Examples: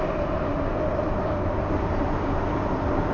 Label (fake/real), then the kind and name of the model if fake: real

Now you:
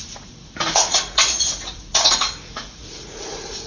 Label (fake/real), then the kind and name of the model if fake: fake, vocoder, Vocos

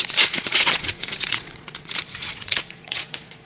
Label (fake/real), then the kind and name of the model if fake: fake, vocoder, Vocos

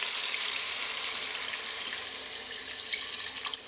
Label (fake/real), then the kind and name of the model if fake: real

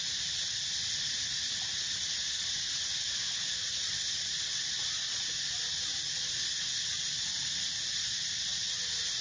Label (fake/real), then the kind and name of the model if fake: real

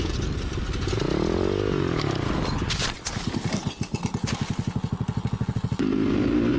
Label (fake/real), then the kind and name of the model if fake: real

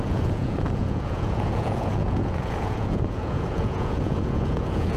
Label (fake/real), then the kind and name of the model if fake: fake, vocoder, Vocos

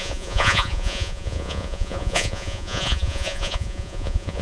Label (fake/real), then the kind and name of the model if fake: fake, vocoder, Vocos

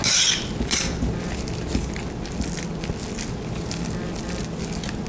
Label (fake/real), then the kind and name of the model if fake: real